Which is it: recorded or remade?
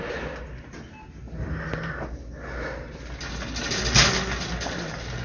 recorded